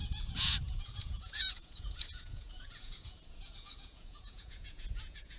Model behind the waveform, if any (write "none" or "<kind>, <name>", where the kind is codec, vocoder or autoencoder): vocoder, Vocos